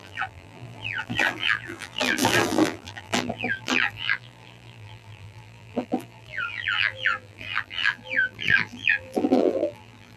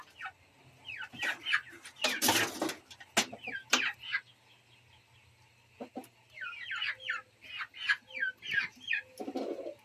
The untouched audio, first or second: second